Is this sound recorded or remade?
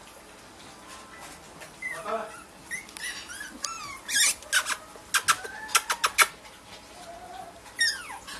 recorded